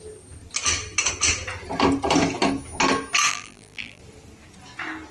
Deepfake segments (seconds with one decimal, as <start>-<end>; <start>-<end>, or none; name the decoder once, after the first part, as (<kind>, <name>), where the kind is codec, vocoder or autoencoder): 3.3-4.0 (vocoder, BigVGAN v2)